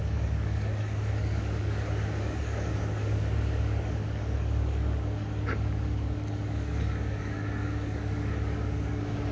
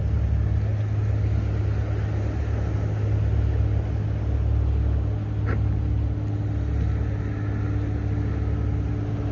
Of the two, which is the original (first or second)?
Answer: second